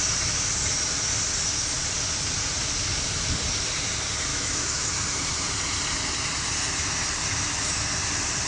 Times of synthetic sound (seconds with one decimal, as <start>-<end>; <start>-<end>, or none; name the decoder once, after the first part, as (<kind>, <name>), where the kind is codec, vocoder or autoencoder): 4.3-4.9 (autoencoder, DAC-VAE)

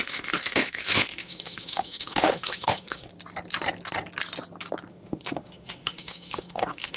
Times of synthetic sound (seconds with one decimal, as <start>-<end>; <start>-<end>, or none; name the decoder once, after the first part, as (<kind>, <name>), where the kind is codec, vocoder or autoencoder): 0.0-3.1 (autoencoder, DAC-VAE); 4.9-7.0

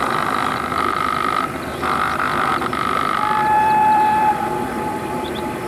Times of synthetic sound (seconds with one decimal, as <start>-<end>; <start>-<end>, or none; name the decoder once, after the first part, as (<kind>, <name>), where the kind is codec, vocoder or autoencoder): 2.5-5.7 (vocoder, BigVGAN v2)

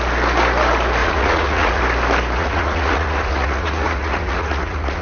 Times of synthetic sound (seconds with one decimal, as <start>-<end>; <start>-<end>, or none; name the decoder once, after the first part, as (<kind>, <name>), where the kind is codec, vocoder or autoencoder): 1.0-1.8 (vocoder, Vocos); 2.4-5.0

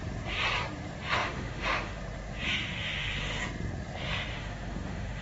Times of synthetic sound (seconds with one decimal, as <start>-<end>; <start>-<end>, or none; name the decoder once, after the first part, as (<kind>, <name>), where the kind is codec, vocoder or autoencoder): 1.2-2.0 (autoencoder, DAC-VAE); 2.6-3.4; 4.3-5.2

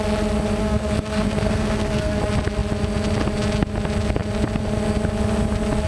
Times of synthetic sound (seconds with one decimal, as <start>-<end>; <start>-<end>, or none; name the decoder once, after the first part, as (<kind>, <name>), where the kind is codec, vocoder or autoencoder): 0.6-2.2 (codec, SNAC)